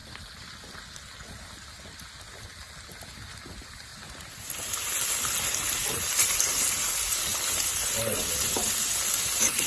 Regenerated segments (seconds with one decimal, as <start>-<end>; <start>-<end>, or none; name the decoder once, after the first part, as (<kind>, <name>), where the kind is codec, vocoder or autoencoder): 3.5-3.9 (vocoder, BigVGAN v2); 5.9-9.7